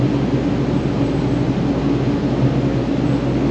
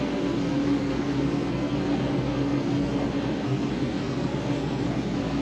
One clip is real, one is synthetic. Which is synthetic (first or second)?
second